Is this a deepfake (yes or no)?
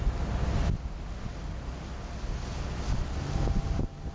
no